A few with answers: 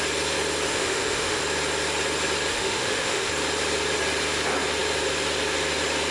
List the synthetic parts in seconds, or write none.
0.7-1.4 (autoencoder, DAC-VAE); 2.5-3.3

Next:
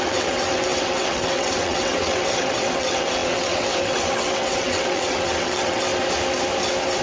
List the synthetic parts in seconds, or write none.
0.0-5.9 (vocoder, WaveNeXt)

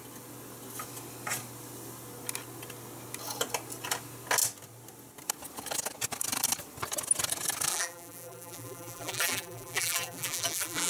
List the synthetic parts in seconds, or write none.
7.7-10.9 (vocoder, BigVGAN v2)

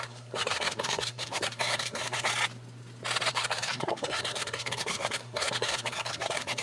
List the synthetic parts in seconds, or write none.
0.0-2.3 (codec, SNAC); 3.3-6.6